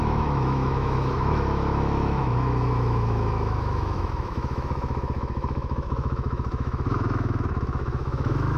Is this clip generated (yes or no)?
yes